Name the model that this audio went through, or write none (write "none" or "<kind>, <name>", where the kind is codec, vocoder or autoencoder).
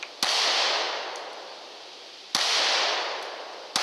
none